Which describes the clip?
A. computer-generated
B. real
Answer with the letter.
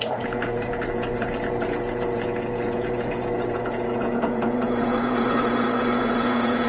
A